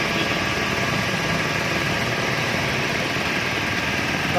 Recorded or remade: recorded